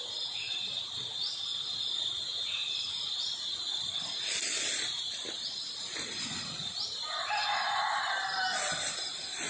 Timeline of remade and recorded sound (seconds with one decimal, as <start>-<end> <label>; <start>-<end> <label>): 0.0-9.5 recorded